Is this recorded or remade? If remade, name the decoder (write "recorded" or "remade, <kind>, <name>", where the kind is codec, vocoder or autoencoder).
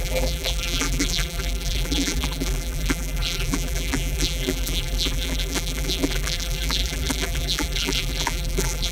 remade, vocoder, BigVGAN v2